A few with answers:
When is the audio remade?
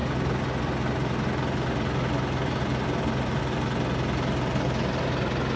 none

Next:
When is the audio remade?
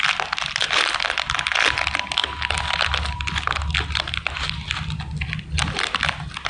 none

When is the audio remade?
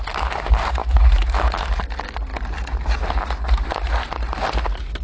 0.8-1.8 (autoencoder, DAC-VAE)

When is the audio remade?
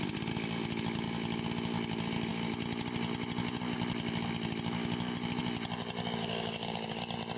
6.2-7.0 (codec, DAC)